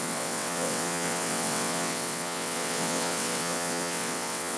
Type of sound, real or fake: fake